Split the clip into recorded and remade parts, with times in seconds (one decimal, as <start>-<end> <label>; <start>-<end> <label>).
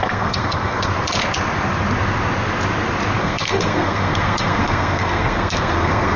0.0-0.9 remade; 0.9-3.2 recorded; 3.2-6.2 remade